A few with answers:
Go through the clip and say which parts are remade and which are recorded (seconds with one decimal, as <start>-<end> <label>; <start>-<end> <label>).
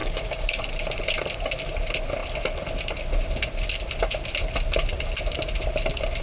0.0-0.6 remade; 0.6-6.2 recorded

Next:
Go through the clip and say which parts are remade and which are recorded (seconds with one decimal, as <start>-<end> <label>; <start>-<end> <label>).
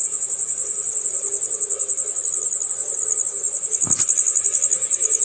0.0-5.2 recorded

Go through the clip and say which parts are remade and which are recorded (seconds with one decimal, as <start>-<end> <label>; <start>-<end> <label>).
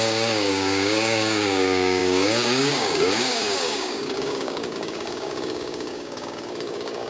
0.0-7.1 remade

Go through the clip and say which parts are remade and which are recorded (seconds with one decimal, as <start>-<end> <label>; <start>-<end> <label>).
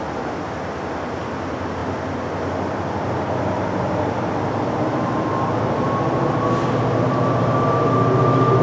0.0-8.6 recorded